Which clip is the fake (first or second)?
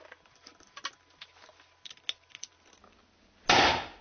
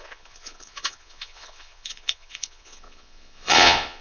second